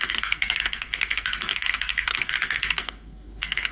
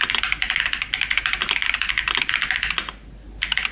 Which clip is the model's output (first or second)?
first